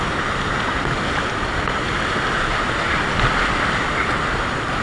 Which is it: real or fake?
real